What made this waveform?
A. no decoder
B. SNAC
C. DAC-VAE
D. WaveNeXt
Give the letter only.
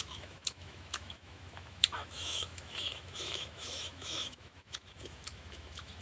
C